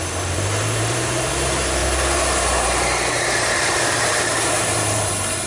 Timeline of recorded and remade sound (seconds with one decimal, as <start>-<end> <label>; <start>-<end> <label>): 0.0-1.3 remade; 1.3-1.8 recorded; 1.8-5.1 remade; 5.1-5.5 recorded